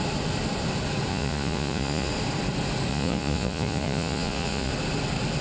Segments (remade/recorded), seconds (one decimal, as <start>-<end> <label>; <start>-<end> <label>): 0.0-1.1 recorded; 1.1-2.1 remade; 2.1-2.9 recorded; 2.9-4.7 remade; 4.7-5.4 recorded